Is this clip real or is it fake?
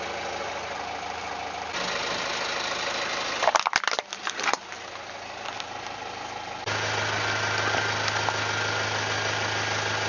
real